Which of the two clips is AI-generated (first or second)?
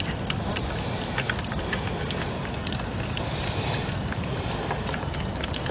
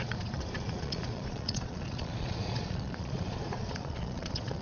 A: second